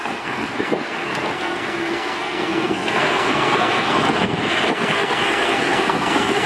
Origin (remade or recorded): remade